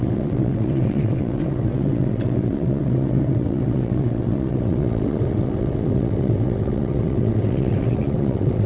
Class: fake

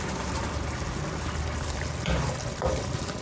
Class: fake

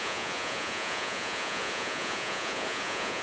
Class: fake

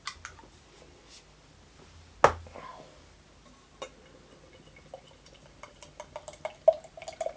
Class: real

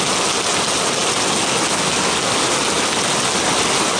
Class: real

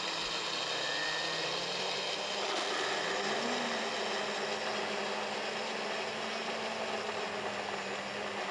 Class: real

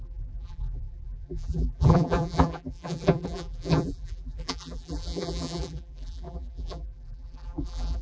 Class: fake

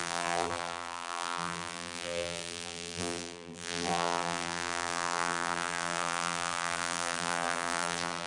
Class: fake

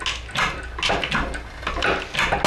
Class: real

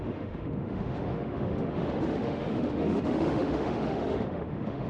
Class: fake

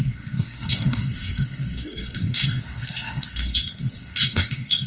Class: fake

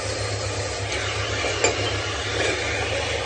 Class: real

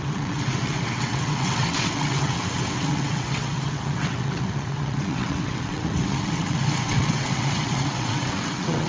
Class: fake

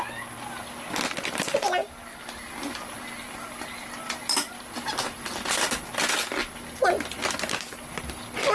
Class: real